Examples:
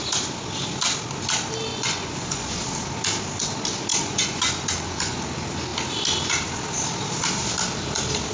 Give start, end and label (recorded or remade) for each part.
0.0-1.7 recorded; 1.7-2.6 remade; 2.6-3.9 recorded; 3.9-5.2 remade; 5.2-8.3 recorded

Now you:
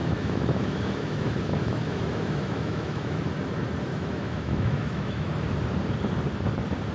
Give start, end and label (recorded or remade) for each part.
0.0-3.2 remade; 3.2-3.9 recorded; 3.9-5.3 remade; 5.3-6.9 recorded

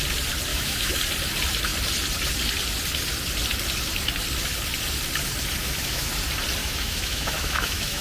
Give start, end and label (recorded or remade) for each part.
0.0-0.5 recorded; 0.5-1.0 remade; 1.0-5.6 recorded; 5.6-6.1 remade; 6.1-6.6 recorded; 6.6-8.0 remade

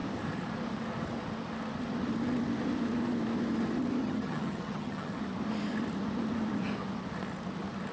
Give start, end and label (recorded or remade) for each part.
0.0-4.0 recorded; 4.0-5.2 remade; 5.2-7.9 recorded

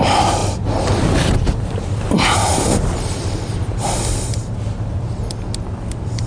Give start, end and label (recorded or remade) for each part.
0.0-6.3 recorded

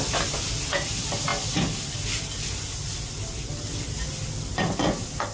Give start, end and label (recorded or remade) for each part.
0.0-5.3 recorded